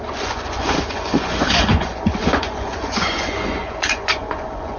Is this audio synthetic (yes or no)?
yes